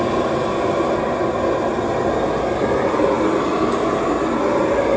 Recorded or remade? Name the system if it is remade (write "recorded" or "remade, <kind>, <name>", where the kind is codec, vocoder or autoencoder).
recorded